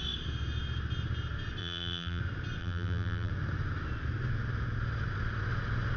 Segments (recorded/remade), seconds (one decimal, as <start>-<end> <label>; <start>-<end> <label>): 0.0-1.6 recorded; 1.6-2.2 remade; 2.2-2.6 recorded; 2.6-3.3 remade; 3.3-6.0 recorded